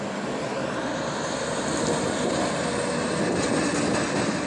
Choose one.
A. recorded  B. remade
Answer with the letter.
A